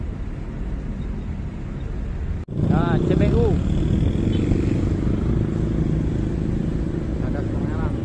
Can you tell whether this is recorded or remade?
recorded